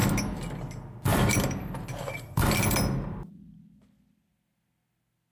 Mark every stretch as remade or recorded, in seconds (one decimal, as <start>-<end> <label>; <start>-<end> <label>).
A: 0.0-1.1 recorded; 1.1-4.3 remade; 4.3-5.3 recorded